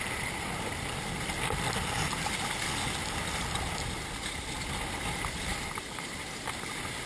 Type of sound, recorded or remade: recorded